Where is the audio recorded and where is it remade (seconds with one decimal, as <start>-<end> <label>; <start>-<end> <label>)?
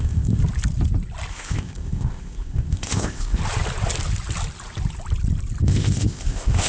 0.0-0.4 remade; 0.4-1.3 recorded; 1.3-3.4 remade; 3.4-5.6 recorded; 5.6-6.7 remade